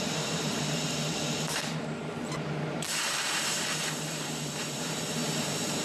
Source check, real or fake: fake